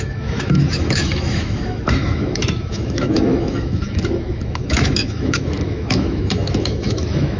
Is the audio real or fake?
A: fake